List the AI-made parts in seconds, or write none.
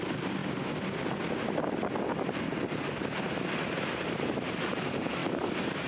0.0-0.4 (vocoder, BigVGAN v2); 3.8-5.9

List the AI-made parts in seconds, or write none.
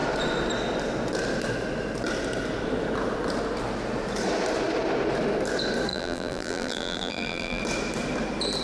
5.9-7.6 (vocoder, BigVGAN v2)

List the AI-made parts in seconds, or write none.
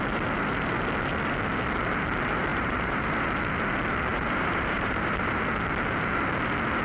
2.5-3.1 (vocoder, BigVGAN v2); 4.1-5.4